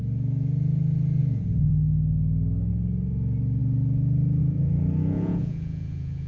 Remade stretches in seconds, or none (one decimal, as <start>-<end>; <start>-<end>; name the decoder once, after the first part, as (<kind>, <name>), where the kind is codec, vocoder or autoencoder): 1.2-1.7 (vocoder, Vocos); 4.4-6.3